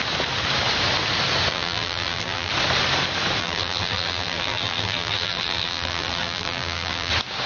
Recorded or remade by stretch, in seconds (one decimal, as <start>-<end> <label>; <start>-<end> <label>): 0.0-1.5 recorded; 1.5-2.5 remade; 2.5-3.4 recorded; 3.4-7.1 remade; 7.1-7.5 recorded